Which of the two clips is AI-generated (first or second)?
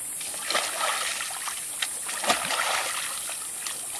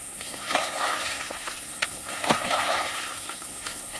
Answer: second